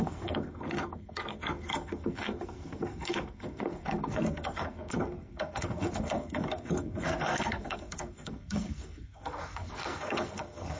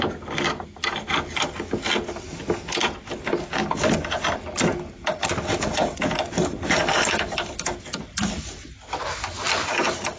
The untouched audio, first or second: second